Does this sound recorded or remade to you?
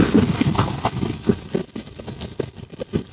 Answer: recorded